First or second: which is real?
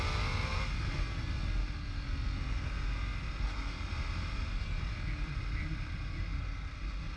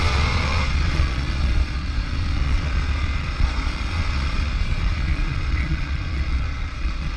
first